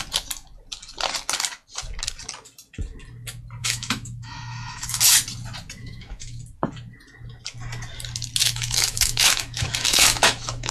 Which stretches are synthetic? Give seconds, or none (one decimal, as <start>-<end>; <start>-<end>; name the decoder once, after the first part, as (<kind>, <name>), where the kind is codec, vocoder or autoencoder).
3.6-5.0 (autoencoder, DAC-VAE); 5.8-6.4; 8.4-10.7